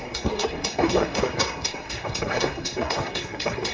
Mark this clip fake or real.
fake